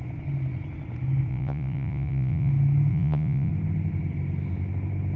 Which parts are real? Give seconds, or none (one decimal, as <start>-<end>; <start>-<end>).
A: 0.0-1.3; 2.5-2.9; 3.5-5.2

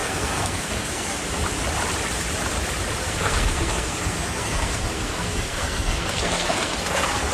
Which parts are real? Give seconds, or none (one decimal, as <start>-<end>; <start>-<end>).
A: 1.2-3.0

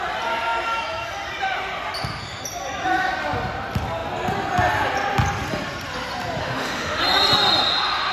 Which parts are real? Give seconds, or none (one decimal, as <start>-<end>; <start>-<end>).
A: 0.0-6.4; 7.0-8.1

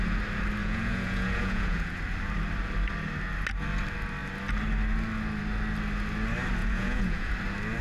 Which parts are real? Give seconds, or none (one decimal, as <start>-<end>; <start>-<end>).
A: 0.0-0.6; 2.0-6.6; 7.3-7.8

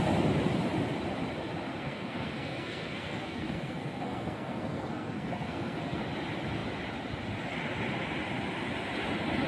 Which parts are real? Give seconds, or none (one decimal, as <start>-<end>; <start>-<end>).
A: 0.0-1.7; 6.0-9.5

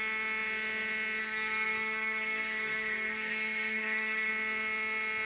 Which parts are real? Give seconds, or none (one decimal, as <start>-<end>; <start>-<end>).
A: 0.0-1.2; 4.3-5.2